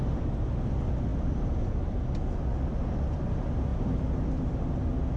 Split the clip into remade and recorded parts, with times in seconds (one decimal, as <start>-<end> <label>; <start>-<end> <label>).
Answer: 0.0-5.2 recorded